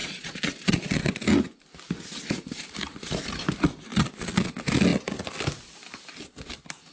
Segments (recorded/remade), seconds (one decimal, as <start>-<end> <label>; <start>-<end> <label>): 0.0-1.2 remade; 1.2-3.9 recorded; 3.9-4.5 remade; 4.5-6.9 recorded